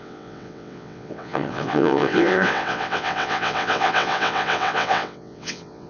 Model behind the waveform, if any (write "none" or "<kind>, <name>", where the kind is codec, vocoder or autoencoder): vocoder, WaveNeXt